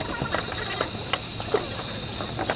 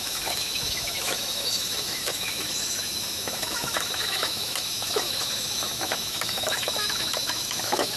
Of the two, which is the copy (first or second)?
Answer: second